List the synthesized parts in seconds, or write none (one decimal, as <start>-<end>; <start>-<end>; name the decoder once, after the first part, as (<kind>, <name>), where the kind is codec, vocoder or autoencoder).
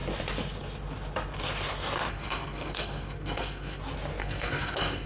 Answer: 2.1-3.8 (codec, SNAC); 4.2-5.1